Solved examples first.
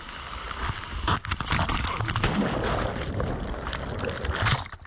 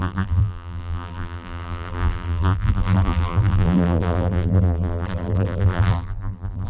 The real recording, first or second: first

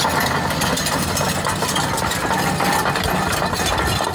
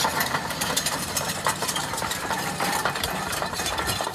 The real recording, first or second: first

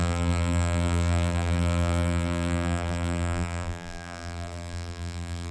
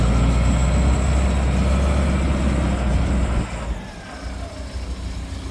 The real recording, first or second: second